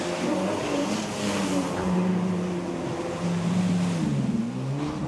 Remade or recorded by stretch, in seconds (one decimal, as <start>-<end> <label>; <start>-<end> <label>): 0.0-0.6 recorded; 0.6-3.7 remade; 3.7-5.1 recorded